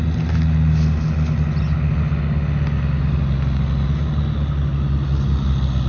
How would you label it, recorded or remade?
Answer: recorded